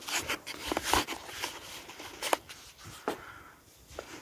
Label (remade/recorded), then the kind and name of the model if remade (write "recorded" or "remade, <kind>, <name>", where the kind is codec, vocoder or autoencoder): recorded